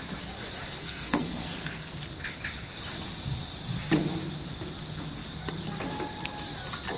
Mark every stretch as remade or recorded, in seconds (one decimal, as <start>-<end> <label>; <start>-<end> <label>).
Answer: 0.0-0.8 recorded; 0.8-2.0 remade; 2.0-7.0 recorded